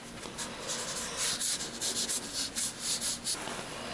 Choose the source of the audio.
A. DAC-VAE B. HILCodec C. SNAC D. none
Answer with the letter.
D